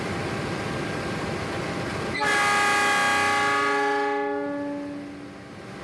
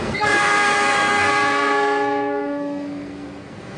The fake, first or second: second